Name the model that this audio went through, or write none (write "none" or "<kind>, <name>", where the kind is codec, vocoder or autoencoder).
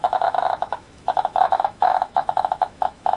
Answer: autoencoder, DAC-VAE